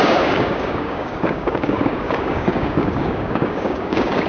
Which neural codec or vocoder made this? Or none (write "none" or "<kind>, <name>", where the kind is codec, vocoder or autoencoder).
codec, DAC